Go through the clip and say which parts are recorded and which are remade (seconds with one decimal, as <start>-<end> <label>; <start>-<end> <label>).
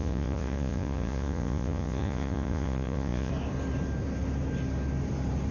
0.0-3.3 remade; 3.3-5.5 recorded